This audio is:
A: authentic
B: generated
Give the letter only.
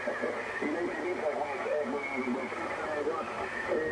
A